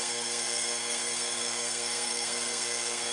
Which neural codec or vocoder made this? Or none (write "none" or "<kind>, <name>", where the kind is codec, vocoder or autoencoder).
codec, SNAC